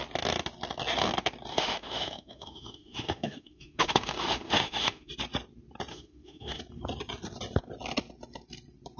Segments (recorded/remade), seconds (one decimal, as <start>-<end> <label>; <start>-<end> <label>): 0.0-1.5 recorded; 1.5-5.1 remade; 5.1-5.9 recorded; 5.9-6.6 remade; 6.6-9.0 recorded